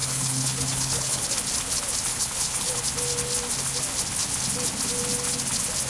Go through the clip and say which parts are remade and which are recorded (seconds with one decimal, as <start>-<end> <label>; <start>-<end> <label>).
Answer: 0.0-1.2 remade; 1.2-2.1 recorded; 2.1-2.7 remade; 2.7-5.9 recorded